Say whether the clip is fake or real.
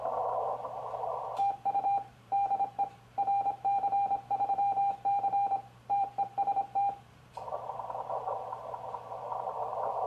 fake